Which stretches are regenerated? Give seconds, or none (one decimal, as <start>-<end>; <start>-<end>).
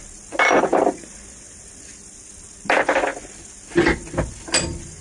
none